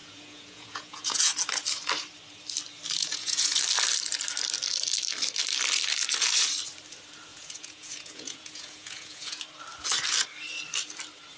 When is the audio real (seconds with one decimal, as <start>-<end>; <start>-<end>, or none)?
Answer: 1.3-3.0; 3.6-7.3; 9.4-11.4

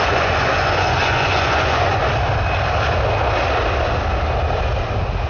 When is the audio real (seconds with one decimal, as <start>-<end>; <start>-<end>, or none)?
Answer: 2.0-5.3

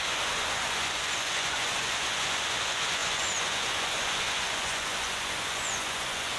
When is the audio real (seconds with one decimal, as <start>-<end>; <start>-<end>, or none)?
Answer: none

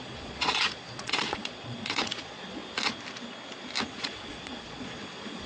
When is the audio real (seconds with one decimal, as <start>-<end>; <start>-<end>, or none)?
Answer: 2.6-3.9

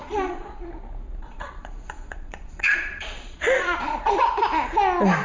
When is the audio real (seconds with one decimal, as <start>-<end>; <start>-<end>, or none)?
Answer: 0.7-1.2; 4.3-5.2

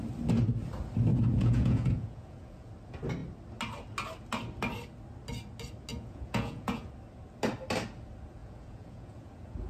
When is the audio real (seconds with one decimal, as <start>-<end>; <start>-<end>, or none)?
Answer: 0.0-1.1; 2.7-5.9; 6.9-8.4